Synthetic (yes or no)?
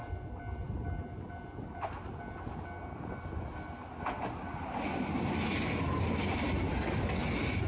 no